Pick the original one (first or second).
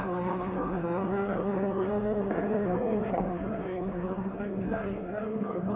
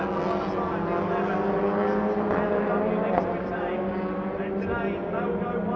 second